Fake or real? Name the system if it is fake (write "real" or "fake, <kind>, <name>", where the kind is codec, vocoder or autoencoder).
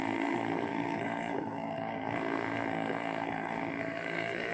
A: fake, codec, SNAC